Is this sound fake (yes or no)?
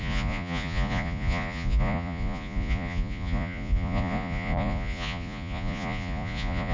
yes